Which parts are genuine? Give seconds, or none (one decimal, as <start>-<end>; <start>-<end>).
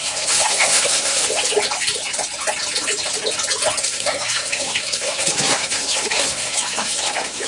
1.2-3.8